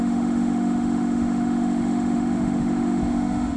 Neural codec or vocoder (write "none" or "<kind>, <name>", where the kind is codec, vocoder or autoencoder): autoencoder, DAC-VAE